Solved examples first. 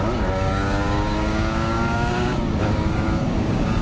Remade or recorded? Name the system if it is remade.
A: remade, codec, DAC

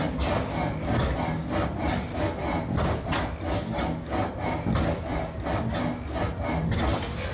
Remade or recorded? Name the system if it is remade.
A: recorded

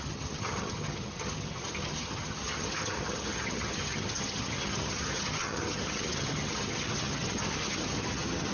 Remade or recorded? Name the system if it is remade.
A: remade, vocoder, HiFi-GAN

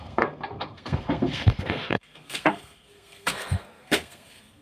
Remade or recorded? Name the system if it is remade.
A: remade, codec, SNAC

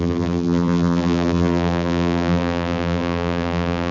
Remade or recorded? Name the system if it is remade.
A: remade, vocoder, BigVGAN v2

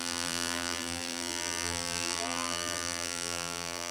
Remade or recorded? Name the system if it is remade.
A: remade, vocoder, BigVGAN v2